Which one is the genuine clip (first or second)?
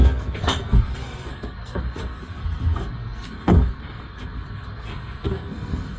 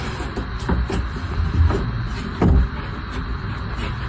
second